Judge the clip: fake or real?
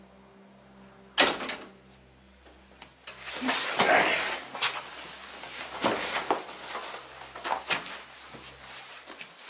real